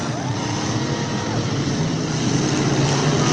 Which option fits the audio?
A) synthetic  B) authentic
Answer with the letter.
B